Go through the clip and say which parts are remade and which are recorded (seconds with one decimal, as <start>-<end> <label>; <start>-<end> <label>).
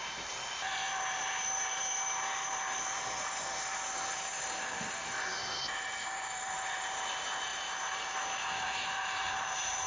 0.0-9.9 remade